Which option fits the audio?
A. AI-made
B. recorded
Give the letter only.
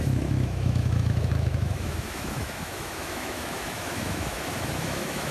A